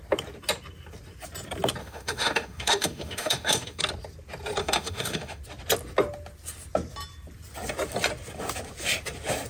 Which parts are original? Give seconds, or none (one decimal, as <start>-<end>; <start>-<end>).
0.0-1.8; 3.8-4.6; 5.4-9.5